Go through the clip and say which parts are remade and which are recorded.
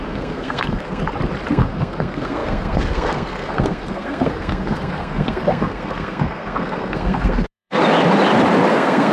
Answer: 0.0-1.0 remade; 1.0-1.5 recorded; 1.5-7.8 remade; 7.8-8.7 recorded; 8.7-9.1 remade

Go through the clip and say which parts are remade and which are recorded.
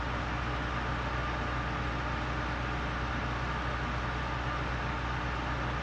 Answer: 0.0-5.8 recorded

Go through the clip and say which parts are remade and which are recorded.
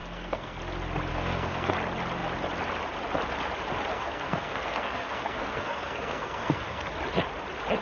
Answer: 0.0-0.6 remade; 0.6-1.1 recorded; 1.1-1.7 remade; 1.7-3.9 recorded; 3.9-6.9 remade; 6.9-7.8 recorded